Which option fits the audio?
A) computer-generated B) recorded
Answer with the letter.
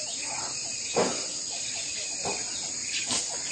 B